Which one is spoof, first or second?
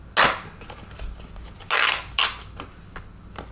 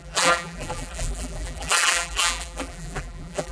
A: second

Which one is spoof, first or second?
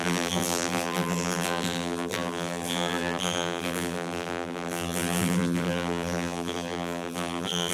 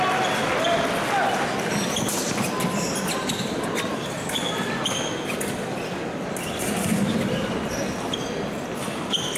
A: first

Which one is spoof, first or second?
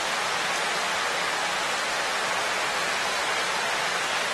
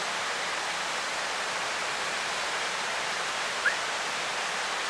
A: second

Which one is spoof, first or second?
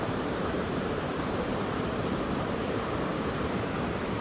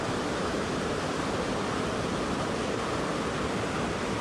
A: first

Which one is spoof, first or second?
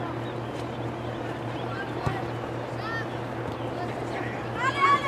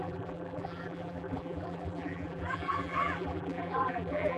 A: second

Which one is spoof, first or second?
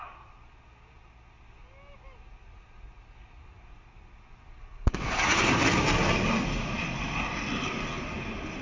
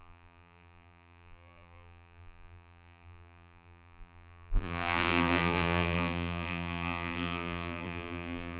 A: second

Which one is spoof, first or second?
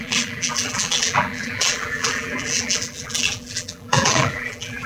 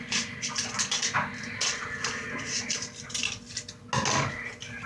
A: first